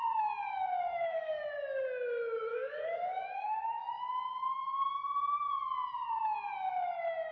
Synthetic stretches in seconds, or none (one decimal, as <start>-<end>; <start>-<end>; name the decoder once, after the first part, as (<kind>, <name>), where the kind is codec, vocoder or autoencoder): 0.5-1.4 (codec, DAC); 2.5-3.9